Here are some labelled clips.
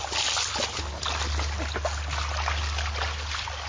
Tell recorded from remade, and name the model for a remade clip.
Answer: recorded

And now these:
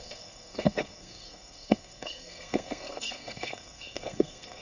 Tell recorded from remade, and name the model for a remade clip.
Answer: remade, codec, SNAC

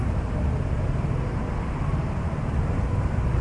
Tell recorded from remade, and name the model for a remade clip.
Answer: remade, vocoder, BigVGAN v2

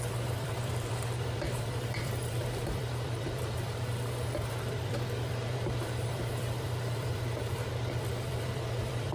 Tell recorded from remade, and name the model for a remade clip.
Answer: remade, vocoder, BigVGAN v2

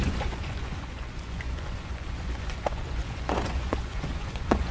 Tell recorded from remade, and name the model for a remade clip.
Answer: remade, vocoder, Vocos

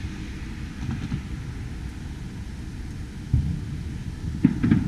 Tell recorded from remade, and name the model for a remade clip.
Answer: recorded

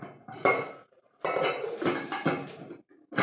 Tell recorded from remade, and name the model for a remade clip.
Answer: recorded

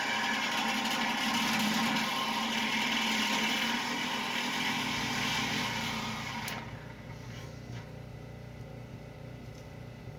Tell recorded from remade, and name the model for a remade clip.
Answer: recorded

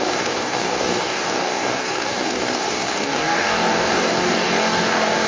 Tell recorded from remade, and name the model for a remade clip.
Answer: remade, codec, DAC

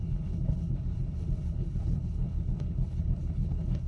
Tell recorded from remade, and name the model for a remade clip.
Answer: remade, codec, HILCodec